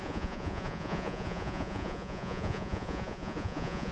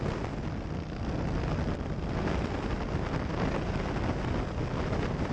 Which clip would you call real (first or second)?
second